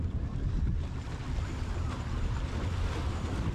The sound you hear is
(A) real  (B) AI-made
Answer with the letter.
B